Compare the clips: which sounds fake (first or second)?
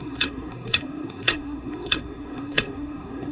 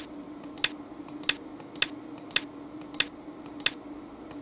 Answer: first